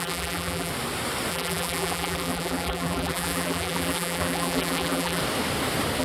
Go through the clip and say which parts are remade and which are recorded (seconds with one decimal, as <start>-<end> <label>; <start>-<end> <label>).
0.0-0.7 remade; 0.7-1.3 recorded; 1.3-5.2 remade; 5.2-6.0 recorded